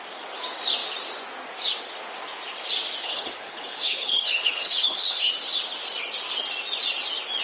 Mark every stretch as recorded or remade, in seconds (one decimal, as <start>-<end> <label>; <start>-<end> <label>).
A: 0.0-3.0 recorded; 3.0-5.3 remade; 5.3-7.4 recorded